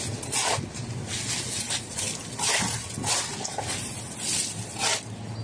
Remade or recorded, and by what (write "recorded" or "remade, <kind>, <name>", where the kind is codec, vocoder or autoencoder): recorded